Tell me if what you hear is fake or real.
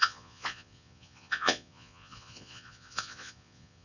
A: fake